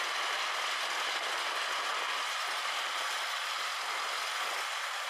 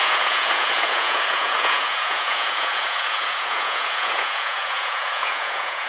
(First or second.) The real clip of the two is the first